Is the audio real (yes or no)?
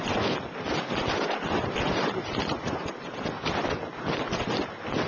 yes